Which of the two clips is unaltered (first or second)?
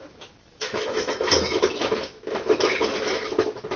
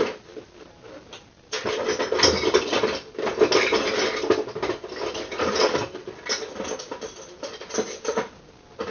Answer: second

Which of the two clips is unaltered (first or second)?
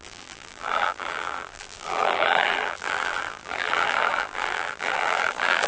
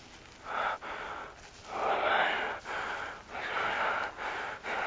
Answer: second